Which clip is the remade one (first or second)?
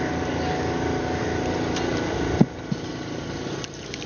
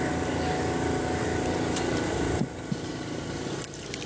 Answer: second